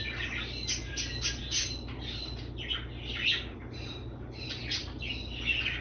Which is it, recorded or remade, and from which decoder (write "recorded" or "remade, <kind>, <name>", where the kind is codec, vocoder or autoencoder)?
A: recorded